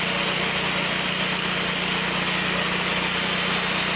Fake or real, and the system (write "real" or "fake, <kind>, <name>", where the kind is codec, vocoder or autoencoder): real